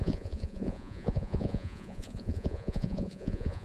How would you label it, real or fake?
fake